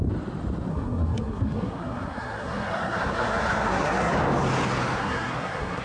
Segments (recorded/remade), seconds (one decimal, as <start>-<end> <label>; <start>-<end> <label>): 0.0-0.7 recorded; 0.7-4.1 remade; 4.1-5.0 recorded; 5.0-5.8 remade